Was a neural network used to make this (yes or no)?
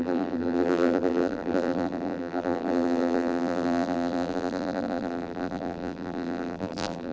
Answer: yes